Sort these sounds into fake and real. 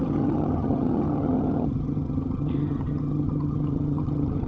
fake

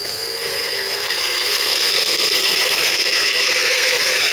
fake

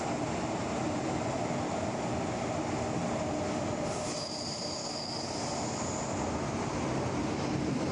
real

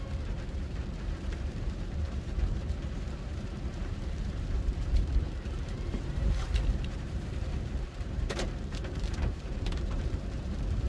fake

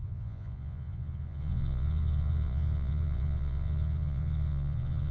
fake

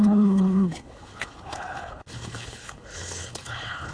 fake